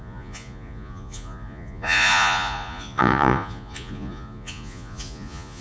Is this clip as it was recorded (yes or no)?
no